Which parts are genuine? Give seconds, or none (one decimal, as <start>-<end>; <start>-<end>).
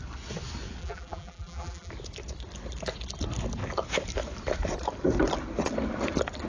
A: 0.0-0.8; 1.9-6.5